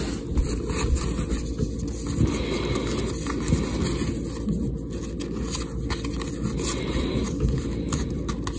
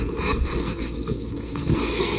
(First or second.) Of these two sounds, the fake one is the second